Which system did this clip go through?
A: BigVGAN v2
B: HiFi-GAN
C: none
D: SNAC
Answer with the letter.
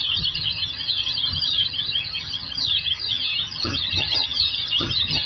B